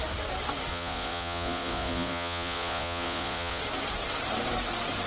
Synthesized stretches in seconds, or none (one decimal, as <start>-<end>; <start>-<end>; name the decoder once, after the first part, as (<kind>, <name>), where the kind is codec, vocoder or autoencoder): 0.7-3.6 (vocoder, Vocos)